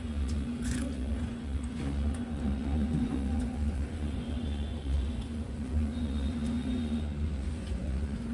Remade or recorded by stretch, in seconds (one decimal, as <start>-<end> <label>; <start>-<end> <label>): 0.0-8.3 remade